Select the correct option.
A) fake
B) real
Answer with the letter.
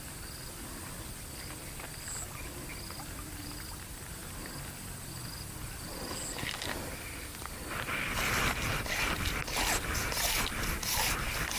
B